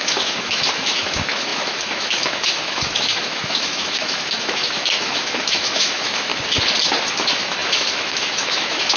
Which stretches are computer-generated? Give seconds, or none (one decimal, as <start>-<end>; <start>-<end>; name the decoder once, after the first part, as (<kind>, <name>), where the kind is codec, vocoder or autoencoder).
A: 0.0-6.3 (autoencoder, DAC-VAE); 7.1-9.0

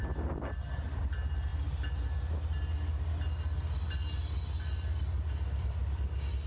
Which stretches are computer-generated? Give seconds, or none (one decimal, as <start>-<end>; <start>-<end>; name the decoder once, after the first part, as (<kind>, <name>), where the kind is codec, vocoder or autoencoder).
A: none

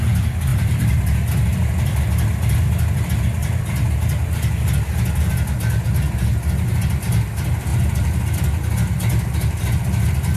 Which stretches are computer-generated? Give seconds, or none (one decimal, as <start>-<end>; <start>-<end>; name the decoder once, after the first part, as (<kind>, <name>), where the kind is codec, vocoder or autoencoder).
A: 0.5-1.0 (vocoder, BigVGAN v2)

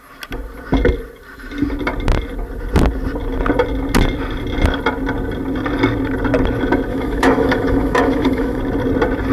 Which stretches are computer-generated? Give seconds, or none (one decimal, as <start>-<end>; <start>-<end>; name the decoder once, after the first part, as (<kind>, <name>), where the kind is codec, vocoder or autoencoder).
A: 6.9-8.6 (autoencoder, DAC-VAE)

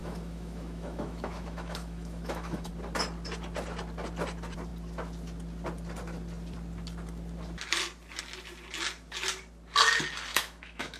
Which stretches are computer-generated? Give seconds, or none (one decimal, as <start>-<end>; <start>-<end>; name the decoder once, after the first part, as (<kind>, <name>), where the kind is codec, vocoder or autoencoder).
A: 0.0-2.7 (autoencoder, DAC-VAE); 10.3-11.0

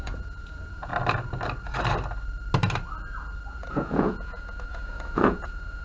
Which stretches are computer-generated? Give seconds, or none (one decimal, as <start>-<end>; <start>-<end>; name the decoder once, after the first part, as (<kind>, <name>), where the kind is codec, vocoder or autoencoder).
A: 0.0-0.9 (vocoder, Vocos); 3.5-5.8

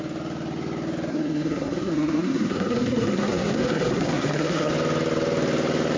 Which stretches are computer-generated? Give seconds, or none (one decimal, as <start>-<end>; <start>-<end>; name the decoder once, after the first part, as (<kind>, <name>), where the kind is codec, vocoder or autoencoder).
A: 1.1-4.7 (codec, SNAC)

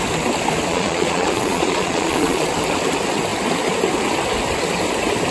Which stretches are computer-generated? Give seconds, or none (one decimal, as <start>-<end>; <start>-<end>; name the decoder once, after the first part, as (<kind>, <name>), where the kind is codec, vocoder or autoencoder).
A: 0.7-2.5 (vocoder, Vocos)